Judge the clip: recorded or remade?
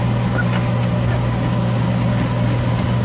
recorded